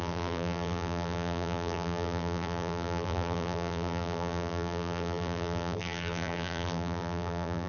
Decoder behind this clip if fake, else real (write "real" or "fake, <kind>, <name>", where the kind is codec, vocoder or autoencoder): fake, vocoder, BigVGAN v2